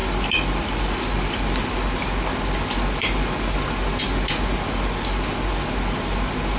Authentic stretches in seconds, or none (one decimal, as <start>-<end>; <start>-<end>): 0.0-6.6